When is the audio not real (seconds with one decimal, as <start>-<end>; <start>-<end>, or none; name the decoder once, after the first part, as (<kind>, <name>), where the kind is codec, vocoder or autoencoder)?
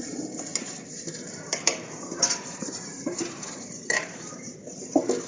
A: 0.5-1.1 (vocoder, BigVGAN v2); 1.5-4.5